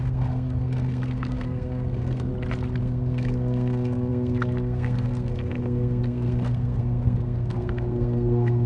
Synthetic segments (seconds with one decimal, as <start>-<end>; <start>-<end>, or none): 0.0-2.3; 2.8-8.7